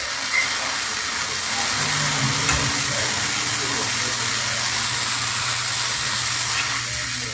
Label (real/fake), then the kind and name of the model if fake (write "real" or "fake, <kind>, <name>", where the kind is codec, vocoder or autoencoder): real